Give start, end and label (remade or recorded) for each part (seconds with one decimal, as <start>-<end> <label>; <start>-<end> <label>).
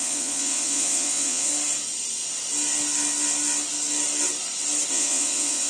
0.0-1.5 remade; 1.5-4.9 recorded; 4.9-5.7 remade